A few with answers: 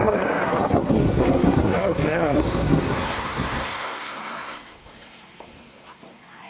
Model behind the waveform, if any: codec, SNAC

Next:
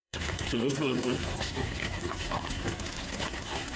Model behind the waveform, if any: codec, SNAC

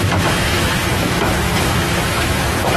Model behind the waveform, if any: autoencoder, DAC-VAE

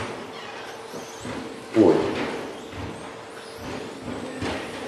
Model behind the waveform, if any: none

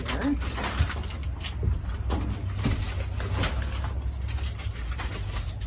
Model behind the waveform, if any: none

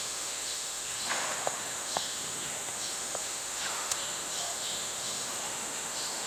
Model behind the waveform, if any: autoencoder, DAC-VAE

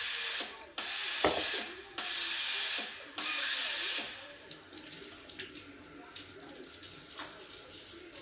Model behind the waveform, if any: none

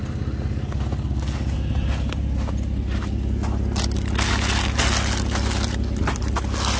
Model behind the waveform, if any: none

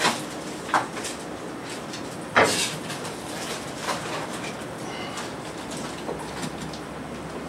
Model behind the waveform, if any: none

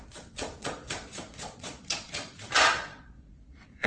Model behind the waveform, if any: vocoder, Vocos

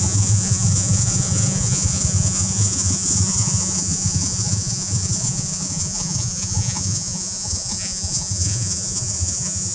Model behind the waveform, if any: vocoder, Vocos